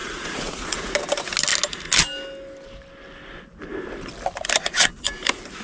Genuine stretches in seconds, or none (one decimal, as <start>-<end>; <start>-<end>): 0.9-5.6